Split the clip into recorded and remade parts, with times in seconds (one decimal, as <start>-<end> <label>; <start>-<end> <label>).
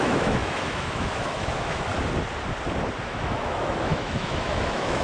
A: 0.0-1.9 remade; 1.9-3.0 recorded; 3.0-5.0 remade